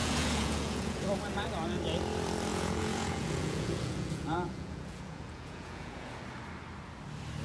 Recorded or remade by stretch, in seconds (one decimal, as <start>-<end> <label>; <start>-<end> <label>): 0.0-1.2 remade; 1.2-2.5 recorded; 2.5-6.2 remade; 6.2-7.4 recorded